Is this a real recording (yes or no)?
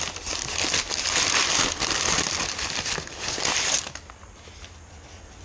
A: yes